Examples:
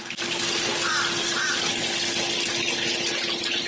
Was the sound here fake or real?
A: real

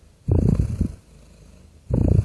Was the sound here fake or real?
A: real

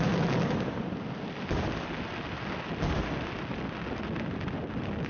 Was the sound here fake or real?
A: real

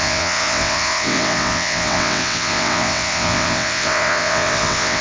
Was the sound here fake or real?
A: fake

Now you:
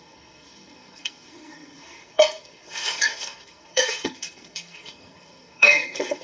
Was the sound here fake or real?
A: fake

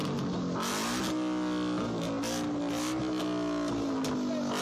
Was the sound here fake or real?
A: real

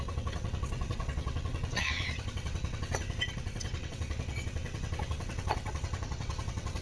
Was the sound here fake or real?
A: fake